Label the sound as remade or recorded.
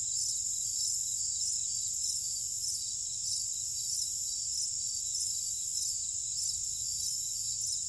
recorded